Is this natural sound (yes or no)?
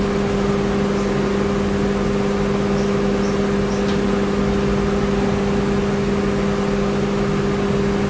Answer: yes